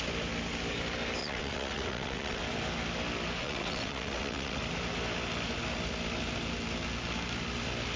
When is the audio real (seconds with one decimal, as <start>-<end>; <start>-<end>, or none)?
0.0-1.2; 2.4-3.4; 4.6-8.0